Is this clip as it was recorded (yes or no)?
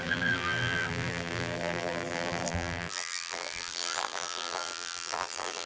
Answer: no